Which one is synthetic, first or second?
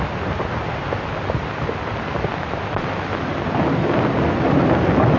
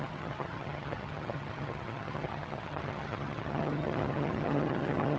second